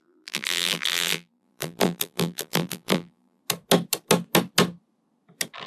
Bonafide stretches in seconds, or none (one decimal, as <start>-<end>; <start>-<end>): 3.4-5.7